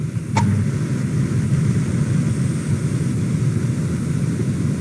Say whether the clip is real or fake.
real